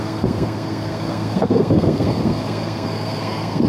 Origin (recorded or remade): remade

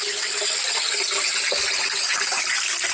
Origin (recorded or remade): recorded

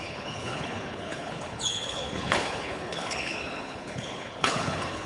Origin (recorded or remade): remade